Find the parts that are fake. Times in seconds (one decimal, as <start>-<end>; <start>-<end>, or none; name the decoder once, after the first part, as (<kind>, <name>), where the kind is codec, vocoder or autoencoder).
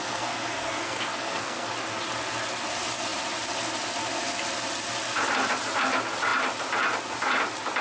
0.0-1.7 (codec, SNAC)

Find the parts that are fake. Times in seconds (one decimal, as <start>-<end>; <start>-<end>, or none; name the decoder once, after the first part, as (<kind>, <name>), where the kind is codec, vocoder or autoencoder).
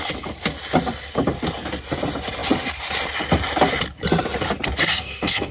4.9-5.5 (codec, SNAC)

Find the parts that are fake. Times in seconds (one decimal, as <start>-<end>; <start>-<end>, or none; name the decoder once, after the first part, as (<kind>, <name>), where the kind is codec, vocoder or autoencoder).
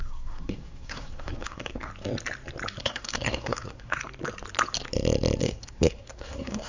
0.0-1.9 (codec, SNAC); 2.8-4.0; 5.4-6.7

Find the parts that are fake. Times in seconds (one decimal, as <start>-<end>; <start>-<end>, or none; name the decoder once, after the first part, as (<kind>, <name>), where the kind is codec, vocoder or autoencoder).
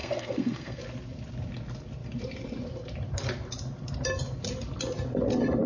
0.0-0.8 (codec, SNAC)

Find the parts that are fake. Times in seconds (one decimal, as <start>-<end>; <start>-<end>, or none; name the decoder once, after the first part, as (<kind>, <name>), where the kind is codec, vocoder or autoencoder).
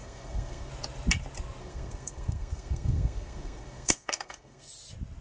0.0-0.7 (codec, SNAC); 1.6-4.7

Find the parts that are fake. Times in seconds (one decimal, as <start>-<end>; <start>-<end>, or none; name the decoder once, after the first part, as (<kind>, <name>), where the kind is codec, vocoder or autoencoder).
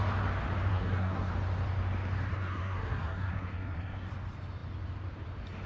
0.7-1.3 (codec, SNAC); 2.3-4.1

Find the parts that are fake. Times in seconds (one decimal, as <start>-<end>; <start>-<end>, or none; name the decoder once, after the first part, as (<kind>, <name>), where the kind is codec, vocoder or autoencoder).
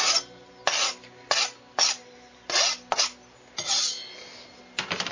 none